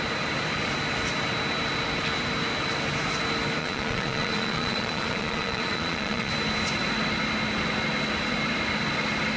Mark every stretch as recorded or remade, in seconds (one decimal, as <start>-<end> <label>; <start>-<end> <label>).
0.0-3.6 recorded; 3.6-6.3 remade; 6.3-9.4 recorded